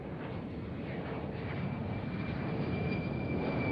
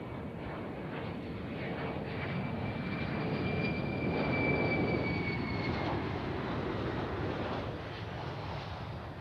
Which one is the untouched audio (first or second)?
second